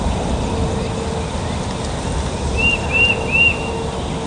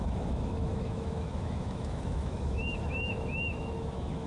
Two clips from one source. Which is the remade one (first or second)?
second